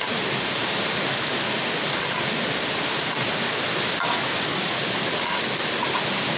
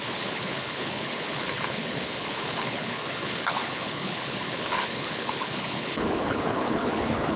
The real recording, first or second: first